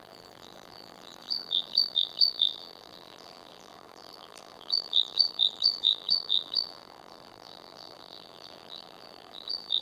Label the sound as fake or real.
fake